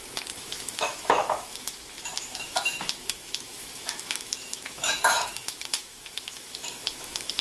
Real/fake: fake